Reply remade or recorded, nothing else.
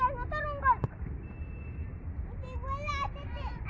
recorded